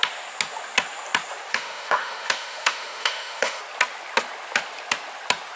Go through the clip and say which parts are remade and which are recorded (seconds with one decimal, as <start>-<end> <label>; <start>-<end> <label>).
0.0-1.5 recorded; 1.5-3.6 remade; 3.6-5.6 recorded